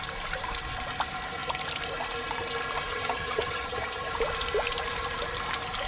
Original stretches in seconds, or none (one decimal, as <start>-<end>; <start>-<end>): 0.0-2.9; 4.1-5.9